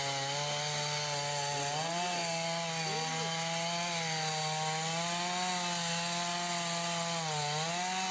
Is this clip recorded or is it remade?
recorded